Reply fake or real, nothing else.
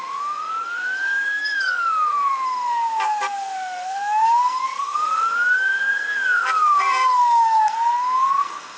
fake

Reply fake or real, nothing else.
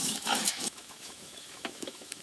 fake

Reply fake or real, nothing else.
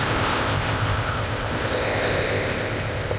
fake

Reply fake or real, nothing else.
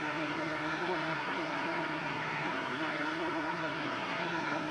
fake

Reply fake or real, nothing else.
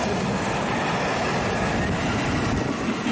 real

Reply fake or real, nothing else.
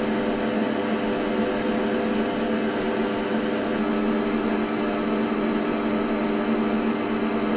real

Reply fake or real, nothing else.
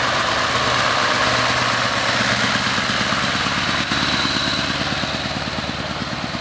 real